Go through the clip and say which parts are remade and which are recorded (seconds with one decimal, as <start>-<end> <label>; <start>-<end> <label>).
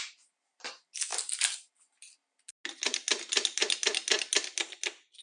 0.0-5.2 recorded